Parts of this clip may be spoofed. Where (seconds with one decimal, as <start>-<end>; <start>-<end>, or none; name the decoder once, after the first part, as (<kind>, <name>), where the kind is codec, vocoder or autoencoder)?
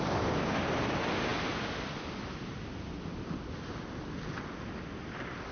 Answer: none